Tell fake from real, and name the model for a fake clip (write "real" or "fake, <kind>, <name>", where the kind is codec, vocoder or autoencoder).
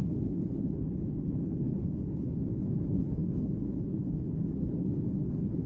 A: fake, codec, HILCodec